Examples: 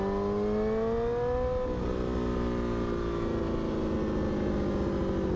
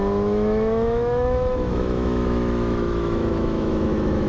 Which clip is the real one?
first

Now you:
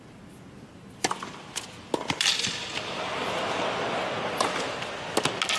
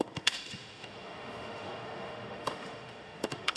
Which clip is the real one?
first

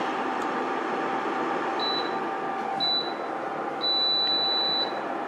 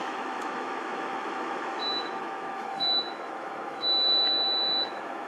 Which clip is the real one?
first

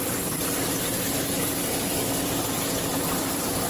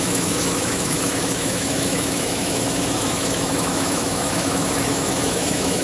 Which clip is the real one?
first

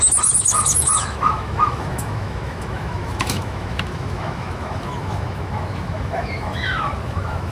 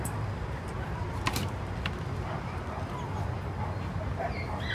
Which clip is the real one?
second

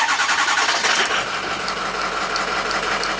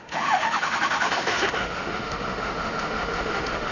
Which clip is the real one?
first